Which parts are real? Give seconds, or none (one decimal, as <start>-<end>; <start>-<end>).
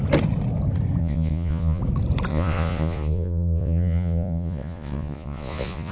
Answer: 0.0-1.0; 1.8-2.3